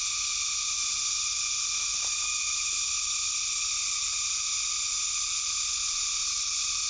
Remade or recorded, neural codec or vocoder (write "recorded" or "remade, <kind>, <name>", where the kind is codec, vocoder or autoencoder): recorded